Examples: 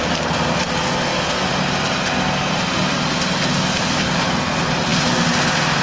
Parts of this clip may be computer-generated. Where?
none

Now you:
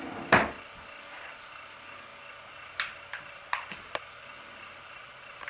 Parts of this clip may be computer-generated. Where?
none

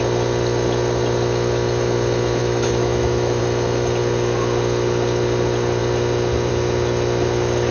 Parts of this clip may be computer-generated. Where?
2.4-3.4 (autoencoder, DAC-VAE)

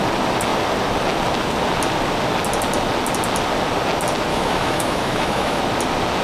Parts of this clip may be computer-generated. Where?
4.3-5.6 (autoencoder, DAC-VAE)